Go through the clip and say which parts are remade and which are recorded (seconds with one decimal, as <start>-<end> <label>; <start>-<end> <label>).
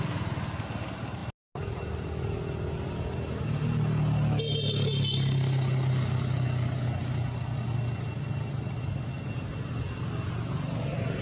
0.0-11.2 recorded